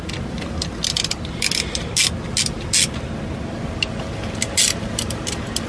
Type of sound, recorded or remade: recorded